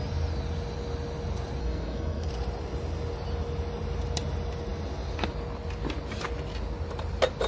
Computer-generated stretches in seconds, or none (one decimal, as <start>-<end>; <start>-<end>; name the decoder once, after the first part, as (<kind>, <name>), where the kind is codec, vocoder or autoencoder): 1.6-2.3 (codec, SNAC)